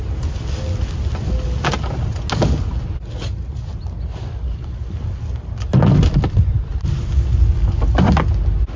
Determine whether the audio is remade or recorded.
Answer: recorded